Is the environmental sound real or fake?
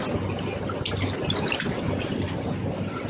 real